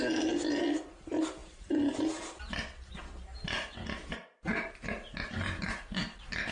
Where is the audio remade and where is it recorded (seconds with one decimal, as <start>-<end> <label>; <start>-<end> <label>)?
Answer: 0.0-6.5 recorded